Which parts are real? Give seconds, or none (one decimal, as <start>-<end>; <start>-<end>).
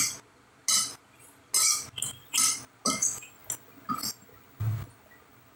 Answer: 0.0-5.6